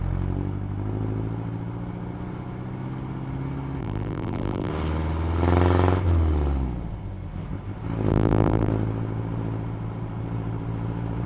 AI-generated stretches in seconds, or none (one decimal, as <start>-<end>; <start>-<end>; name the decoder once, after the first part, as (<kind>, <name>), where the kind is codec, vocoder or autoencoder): 3.8-4.7 (vocoder, BigVGAN v2); 8.1-8.7